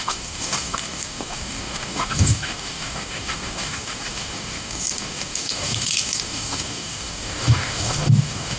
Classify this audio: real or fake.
fake